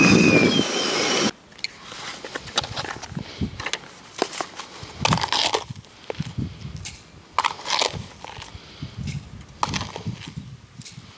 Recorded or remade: recorded